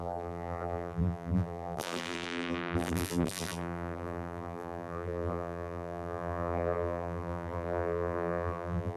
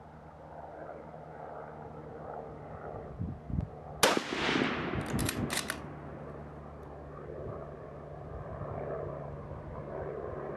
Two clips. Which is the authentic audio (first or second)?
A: second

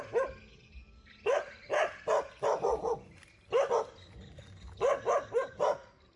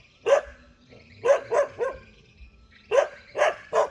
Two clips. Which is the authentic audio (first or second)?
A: first